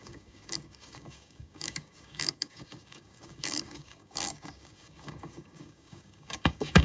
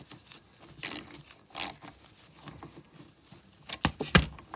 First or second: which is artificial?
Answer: first